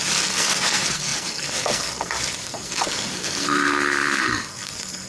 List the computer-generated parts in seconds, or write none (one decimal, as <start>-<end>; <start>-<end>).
0.0-5.1